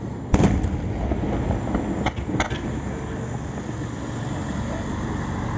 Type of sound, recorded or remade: recorded